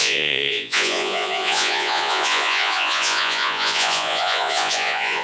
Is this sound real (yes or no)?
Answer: no